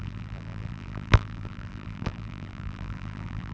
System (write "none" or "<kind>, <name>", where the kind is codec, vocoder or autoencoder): vocoder, BigVGAN v2